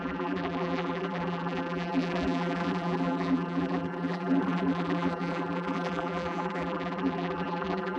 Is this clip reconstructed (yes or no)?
yes